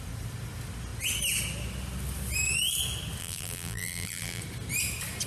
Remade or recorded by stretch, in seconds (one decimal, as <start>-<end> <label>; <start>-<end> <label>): 0.0-3.2 recorded; 3.2-4.4 remade; 4.4-5.3 recorded